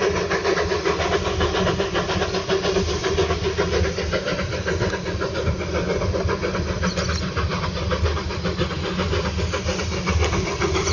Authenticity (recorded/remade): recorded